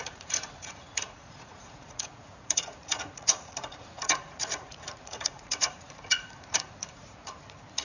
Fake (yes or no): yes